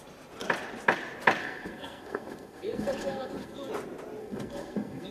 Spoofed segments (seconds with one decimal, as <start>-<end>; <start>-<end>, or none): 1.4-3.7; 4.2-5.1